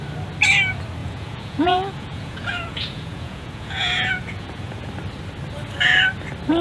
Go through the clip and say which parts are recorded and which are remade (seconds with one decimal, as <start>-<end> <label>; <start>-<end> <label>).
0.0-1.0 recorded; 1.0-4.9 remade; 4.9-6.6 recorded